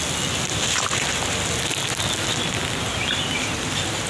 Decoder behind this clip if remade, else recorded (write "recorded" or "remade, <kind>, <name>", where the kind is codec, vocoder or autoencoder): recorded